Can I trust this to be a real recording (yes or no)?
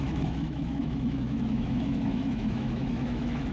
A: no